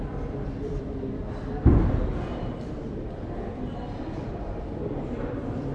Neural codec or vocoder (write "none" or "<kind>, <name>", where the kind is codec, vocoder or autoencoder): vocoder, BigVGAN v2